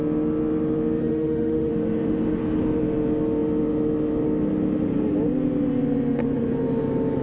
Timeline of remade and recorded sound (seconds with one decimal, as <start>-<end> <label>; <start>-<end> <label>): 0.0-1.0 recorded; 1.0-1.7 remade; 1.7-7.2 recorded